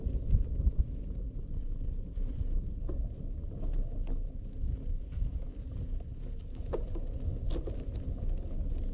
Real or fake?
real